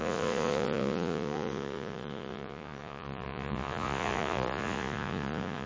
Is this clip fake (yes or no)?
yes